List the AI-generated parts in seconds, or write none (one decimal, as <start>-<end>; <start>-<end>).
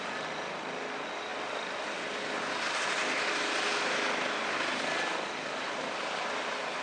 none